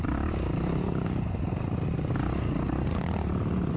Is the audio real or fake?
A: real